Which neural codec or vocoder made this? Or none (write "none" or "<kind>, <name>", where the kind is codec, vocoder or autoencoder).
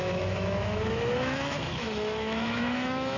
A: autoencoder, DAC-VAE